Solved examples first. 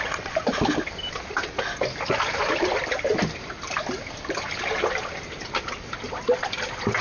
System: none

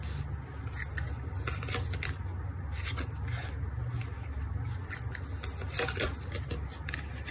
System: none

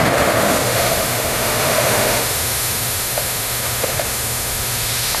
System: autoencoder, DAC-VAE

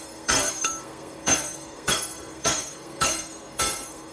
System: codec, SNAC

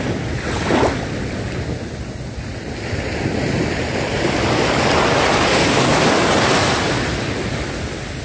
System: none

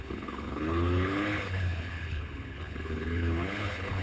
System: codec, HILCodec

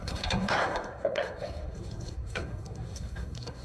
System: codec, SNAC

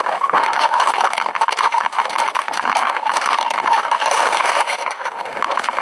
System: autoencoder, DAC-VAE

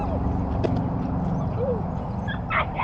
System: none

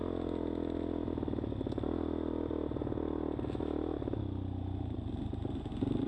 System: none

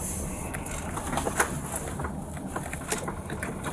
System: none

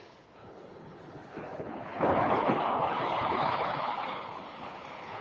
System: codec, HILCodec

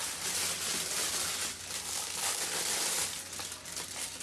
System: none